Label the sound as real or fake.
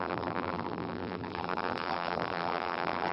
fake